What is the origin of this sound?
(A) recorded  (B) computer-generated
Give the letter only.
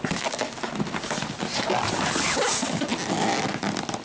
A